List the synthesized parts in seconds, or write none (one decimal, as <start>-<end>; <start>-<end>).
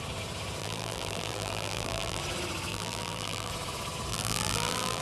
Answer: 0.6-2.2; 2.7-3.5; 4.1-5.0